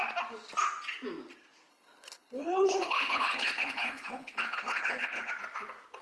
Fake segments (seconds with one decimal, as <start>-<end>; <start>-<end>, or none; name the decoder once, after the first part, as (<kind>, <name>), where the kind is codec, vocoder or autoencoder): 1.7-5.3 (codec, HILCodec)